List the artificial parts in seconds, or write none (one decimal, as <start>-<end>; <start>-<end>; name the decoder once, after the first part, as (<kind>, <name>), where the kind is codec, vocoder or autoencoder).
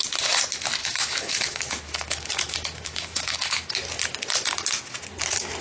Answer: 0.8-3.7 (autoencoder, DAC-VAE)